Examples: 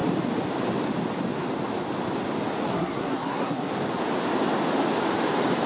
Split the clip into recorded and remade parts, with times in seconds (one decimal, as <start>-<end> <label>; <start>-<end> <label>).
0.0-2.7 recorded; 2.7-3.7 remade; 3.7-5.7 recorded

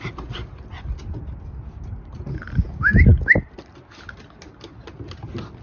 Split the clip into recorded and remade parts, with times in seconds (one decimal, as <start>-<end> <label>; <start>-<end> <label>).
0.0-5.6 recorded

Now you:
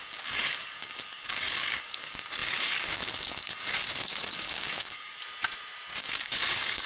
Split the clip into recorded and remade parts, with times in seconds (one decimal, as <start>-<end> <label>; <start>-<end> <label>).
0.0-5.2 remade; 5.2-6.0 recorded; 6.0-6.9 remade

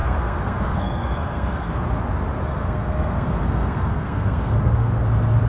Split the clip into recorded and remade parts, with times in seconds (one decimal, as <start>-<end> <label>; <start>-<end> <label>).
0.0-1.7 remade; 1.7-2.4 recorded; 2.4-5.0 remade; 5.0-5.5 recorded

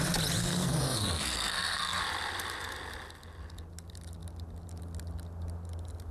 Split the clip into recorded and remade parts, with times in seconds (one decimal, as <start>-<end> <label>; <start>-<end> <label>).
0.0-0.4 recorded; 0.4-2.0 remade; 2.0-6.1 recorded

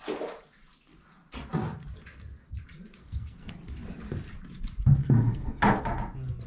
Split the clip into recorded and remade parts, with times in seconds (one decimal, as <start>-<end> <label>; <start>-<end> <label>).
0.0-3.0 recorded; 3.0-3.5 remade; 3.5-5.0 recorded; 5.0-5.6 remade; 5.6-6.5 recorded

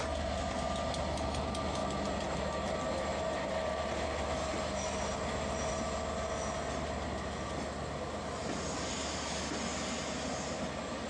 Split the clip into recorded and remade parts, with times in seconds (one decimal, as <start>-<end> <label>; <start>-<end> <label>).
0.0-11.1 recorded